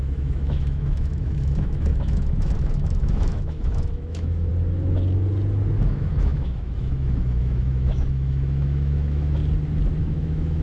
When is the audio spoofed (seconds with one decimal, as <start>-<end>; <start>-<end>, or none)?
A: 0.0-4.5; 5.8-9.4; 10.0-10.6